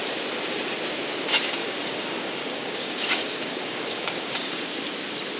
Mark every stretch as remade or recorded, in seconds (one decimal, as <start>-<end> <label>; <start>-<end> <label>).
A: 0.0-1.6 recorded; 1.6-4.8 remade; 4.8-5.4 recorded